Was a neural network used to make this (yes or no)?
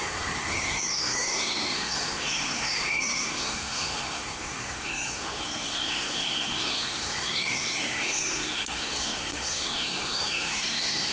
yes